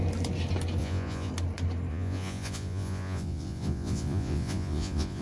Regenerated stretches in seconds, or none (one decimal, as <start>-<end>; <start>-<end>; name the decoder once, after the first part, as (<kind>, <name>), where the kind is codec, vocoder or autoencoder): 0.8-1.3 (vocoder, Vocos); 1.9-5.2